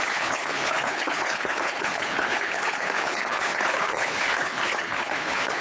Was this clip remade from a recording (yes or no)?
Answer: yes